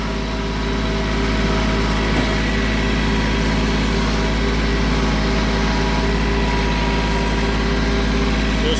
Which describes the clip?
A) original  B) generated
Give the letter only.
A